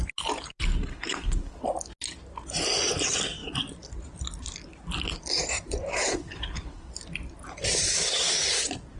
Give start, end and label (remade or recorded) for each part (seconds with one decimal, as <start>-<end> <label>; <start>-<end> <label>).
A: 0.0-0.9 recorded; 0.9-1.6 remade; 1.6-5.9 recorded; 5.9-6.9 remade; 6.9-9.0 recorded